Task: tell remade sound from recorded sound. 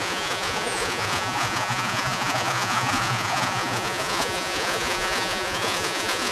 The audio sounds remade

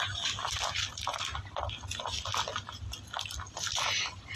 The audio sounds recorded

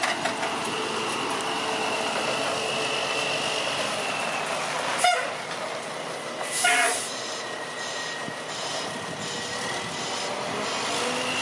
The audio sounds recorded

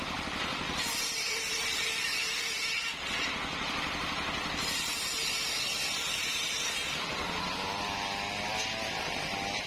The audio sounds remade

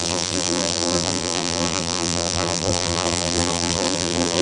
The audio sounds remade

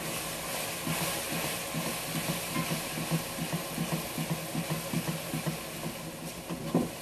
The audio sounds recorded